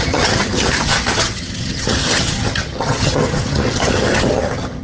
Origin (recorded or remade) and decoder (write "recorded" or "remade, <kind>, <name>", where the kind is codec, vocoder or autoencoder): remade, vocoder, HiFi-GAN